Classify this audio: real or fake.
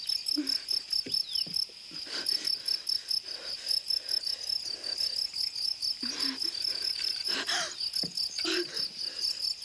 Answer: real